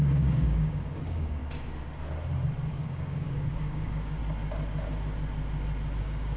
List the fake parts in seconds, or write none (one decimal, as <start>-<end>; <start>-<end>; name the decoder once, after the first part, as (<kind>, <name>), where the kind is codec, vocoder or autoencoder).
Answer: 0.0-1.4 (codec, DAC); 2.7-4.2; 6.0-6.4